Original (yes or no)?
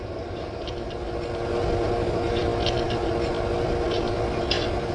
yes